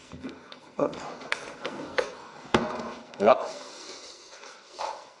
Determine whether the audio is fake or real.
fake